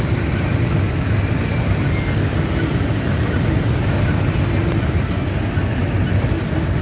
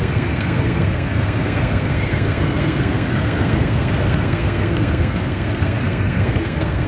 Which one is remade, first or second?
second